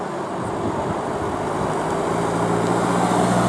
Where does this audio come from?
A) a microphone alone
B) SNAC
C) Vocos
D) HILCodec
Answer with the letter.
A